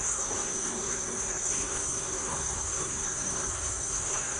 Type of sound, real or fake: fake